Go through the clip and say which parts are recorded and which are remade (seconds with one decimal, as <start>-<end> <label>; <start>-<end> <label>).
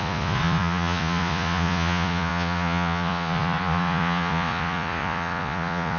0.0-6.0 remade